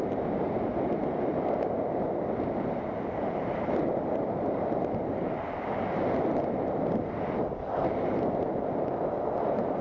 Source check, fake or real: real